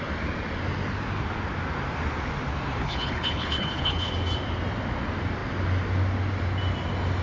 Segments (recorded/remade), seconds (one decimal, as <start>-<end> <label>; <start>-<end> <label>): 0.0-2.8 recorded; 2.8-4.1 remade; 4.1-7.2 recorded